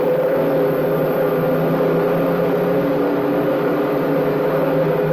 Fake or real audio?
real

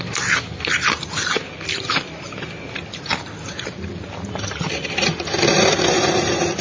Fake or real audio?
real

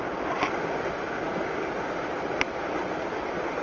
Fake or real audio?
real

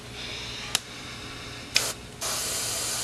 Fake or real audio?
real